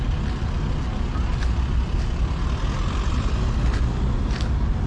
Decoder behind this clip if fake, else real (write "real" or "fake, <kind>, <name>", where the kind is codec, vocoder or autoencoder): real